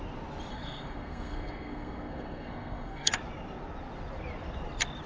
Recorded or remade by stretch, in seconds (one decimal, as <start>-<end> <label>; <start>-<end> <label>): 0.0-0.5 recorded; 0.5-3.1 remade; 3.1-5.1 recorded